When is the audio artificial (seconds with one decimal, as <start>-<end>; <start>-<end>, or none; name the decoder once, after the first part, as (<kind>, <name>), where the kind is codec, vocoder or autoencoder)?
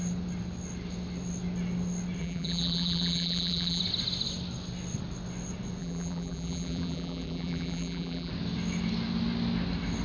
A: 2.2-3.8 (vocoder, BigVGAN v2); 5.8-8.3